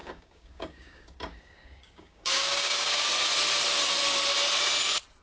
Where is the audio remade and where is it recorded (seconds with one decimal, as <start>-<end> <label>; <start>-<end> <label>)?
0.0-3.1 remade; 3.1-5.2 recorded